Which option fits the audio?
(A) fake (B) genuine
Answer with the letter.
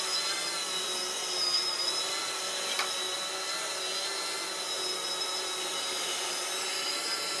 B